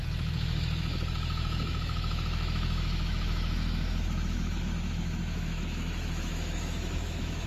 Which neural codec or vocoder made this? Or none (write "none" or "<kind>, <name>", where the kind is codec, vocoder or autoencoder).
autoencoder, DAC-VAE